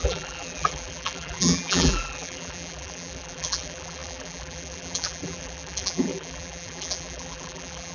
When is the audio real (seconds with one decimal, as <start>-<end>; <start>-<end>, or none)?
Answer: none